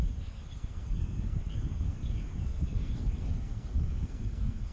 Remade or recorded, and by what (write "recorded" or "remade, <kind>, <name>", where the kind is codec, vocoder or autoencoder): remade, codec, SNAC